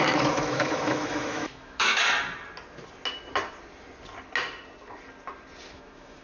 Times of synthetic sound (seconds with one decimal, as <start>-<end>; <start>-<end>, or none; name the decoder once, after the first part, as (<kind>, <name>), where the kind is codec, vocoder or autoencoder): 0.0-2.0 (autoencoder, DAC-VAE); 5.7-6.2